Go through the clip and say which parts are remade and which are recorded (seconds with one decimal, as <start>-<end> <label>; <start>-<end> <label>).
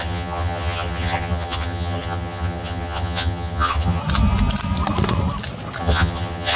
0.0-4.0 remade; 4.0-5.8 recorded; 5.8-6.6 remade